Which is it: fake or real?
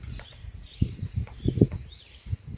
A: fake